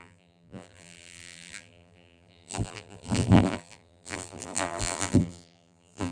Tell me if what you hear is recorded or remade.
remade